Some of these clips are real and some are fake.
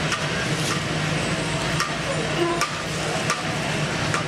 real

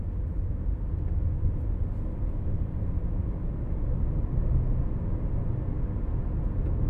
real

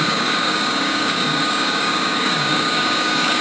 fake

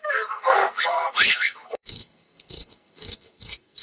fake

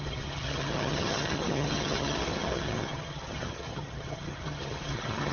fake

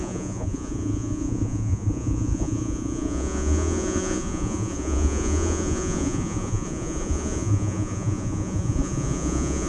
fake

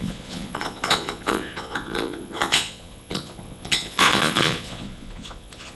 fake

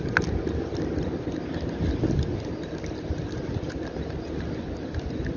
real